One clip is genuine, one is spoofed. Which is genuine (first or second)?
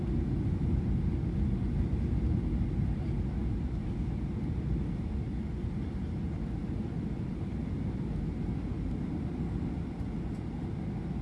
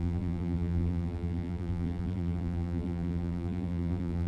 first